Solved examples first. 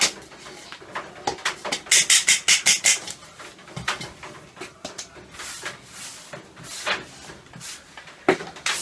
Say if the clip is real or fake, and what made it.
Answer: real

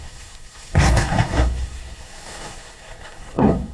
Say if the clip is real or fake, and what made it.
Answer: fake, codec, SNAC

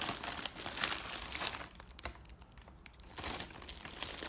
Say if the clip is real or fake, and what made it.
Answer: real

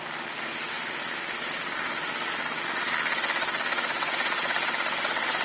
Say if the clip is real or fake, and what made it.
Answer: real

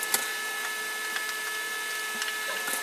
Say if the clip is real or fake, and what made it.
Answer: real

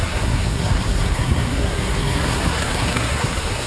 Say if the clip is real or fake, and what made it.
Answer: fake, codec, SNAC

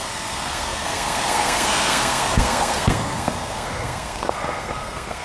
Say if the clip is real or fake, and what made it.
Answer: fake, codec, SNAC